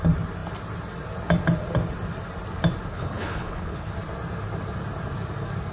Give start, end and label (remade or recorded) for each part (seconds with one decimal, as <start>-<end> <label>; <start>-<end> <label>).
0.0-2.9 recorded; 2.9-3.9 remade; 3.9-5.7 recorded